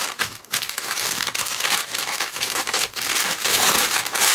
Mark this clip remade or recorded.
remade